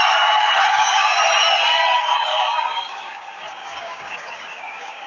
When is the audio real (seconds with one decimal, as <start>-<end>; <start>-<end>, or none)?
0.0-0.7; 1.2-2.3